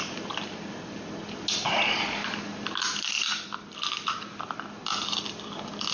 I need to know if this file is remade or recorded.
recorded